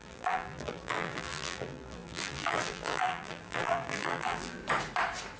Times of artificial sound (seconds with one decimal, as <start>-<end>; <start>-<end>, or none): 0.0-4.6